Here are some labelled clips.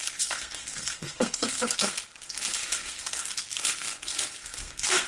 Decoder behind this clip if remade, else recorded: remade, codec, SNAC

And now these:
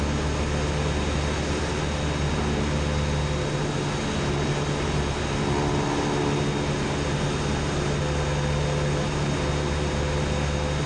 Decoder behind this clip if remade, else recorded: recorded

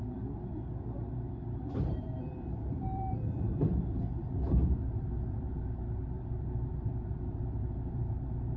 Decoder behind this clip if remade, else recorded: remade, vocoder, BigVGAN v2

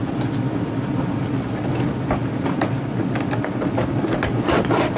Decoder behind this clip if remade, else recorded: recorded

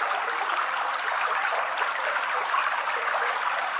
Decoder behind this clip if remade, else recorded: recorded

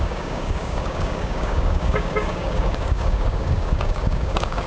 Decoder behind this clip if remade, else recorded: remade, codec, DAC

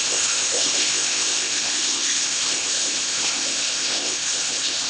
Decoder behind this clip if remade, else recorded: remade, codec, ZipCodec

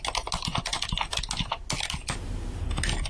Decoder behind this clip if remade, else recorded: recorded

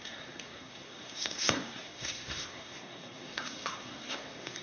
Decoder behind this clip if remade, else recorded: remade, codec, SNAC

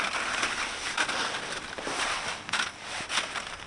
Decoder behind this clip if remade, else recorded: recorded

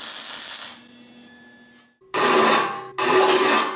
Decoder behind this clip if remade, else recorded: recorded